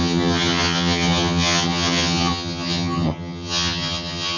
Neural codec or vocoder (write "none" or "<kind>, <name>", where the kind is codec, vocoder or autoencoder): vocoder, HiFi-GAN